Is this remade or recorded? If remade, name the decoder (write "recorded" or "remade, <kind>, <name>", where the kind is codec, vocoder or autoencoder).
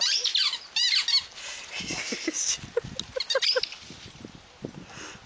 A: recorded